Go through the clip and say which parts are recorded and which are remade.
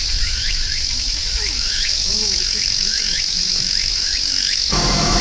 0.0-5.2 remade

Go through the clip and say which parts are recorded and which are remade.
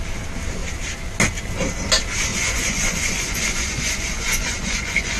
0.0-2.3 recorded; 2.3-5.2 remade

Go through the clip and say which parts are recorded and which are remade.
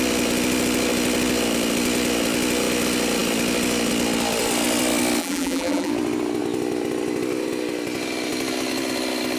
0.0-5.2 recorded; 5.2-5.9 remade; 5.9-9.4 recorded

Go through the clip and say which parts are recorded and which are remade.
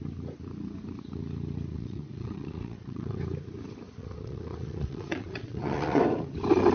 0.0-1.7 recorded; 1.7-3.2 remade; 3.2-4.0 recorded; 4.0-6.0 remade; 6.0-6.7 recorded